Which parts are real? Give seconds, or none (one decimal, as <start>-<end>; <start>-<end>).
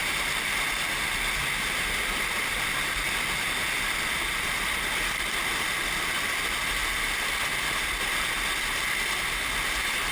0.0-10.1